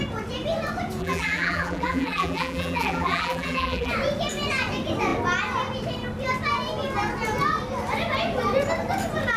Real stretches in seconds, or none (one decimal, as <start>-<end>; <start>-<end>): 0.0-1.0; 3.9-9.4